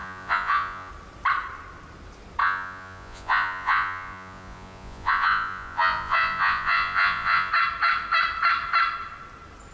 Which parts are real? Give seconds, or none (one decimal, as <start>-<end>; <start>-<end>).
0.9-2.4; 7.5-9.7